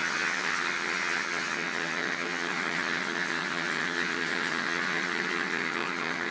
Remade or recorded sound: remade